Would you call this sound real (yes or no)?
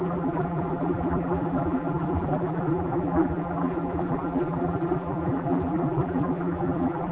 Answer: no